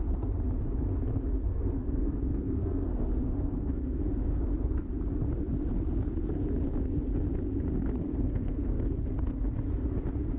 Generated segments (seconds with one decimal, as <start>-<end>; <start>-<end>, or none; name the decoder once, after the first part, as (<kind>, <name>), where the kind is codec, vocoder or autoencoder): 1.4-4.9 (codec, SNAC); 8.1-8.8